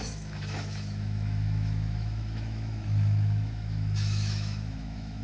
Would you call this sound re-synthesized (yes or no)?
yes